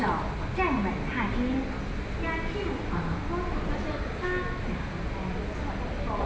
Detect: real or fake real